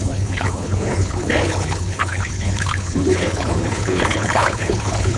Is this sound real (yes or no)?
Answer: no